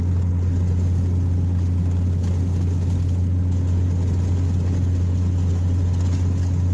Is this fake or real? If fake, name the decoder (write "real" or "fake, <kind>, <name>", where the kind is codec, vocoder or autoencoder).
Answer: real